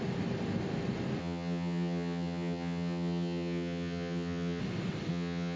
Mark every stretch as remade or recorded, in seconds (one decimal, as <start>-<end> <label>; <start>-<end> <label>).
0.0-1.2 recorded; 1.2-4.6 remade; 4.6-5.1 recorded; 5.1-5.6 remade